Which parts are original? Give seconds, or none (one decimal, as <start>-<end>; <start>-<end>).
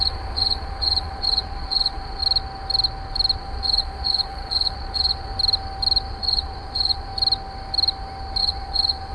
2.2-3.4; 5.3-6.1; 7.1-8.4